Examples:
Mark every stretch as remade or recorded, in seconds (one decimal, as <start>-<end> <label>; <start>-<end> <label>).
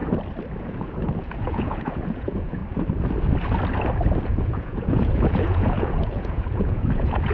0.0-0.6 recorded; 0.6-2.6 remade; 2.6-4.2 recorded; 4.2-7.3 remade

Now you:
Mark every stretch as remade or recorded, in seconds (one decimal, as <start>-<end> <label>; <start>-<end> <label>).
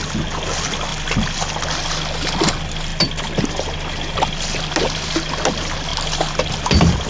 0.0-7.1 recorded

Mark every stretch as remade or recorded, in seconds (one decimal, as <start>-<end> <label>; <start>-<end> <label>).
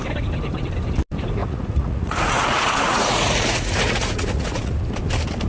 0.0-1.4 recorded; 1.4-4.7 remade; 4.7-5.5 recorded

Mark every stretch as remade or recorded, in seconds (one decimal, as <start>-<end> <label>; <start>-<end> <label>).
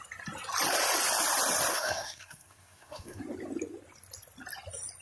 0.0-1.7 recorded; 1.7-3.2 remade; 3.2-5.0 recorded